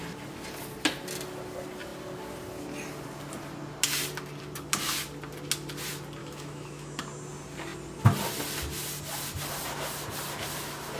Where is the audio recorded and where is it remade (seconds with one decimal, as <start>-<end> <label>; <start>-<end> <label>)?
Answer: 0.0-6.2 recorded; 6.2-7.0 remade; 7.0-11.0 recorded